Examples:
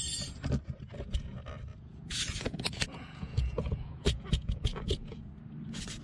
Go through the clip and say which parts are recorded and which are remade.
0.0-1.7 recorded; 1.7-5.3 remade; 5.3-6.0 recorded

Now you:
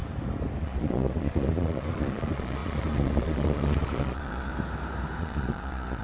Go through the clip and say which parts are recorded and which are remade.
0.0-0.6 recorded; 0.6-4.5 remade; 4.5-5.2 recorded; 5.2-6.0 remade

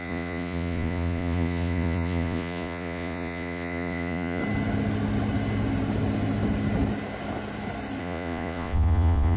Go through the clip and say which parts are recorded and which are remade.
0.0-4.4 remade; 4.4-8.0 recorded; 8.0-9.4 remade

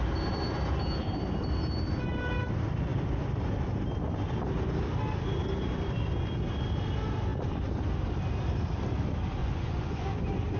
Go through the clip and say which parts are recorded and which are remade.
0.0-9.4 recorded; 9.4-10.1 remade; 10.1-10.6 recorded

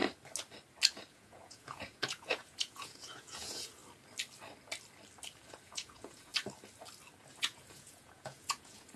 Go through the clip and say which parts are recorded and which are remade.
0.0-1.1 recorded; 1.1-3.8 remade; 3.8-5.5 recorded; 5.5-6.3 remade; 6.3-7.4 recorded; 7.4-9.0 remade

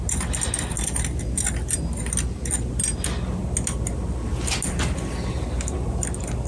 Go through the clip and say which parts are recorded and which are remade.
0.0-6.5 recorded